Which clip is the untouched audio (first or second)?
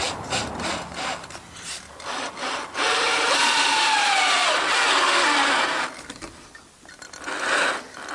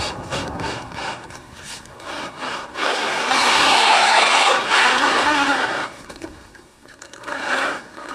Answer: first